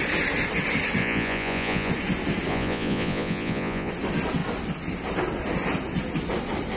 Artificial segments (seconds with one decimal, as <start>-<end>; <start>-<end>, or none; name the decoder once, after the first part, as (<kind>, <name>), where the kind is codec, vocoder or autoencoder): 1.0-1.9 (vocoder, Vocos); 2.5-3.9